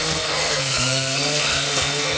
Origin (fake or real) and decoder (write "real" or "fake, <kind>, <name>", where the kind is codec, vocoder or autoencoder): fake, codec, SNAC